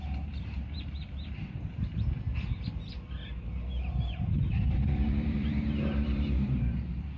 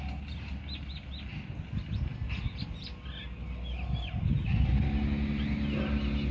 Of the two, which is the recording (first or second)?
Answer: second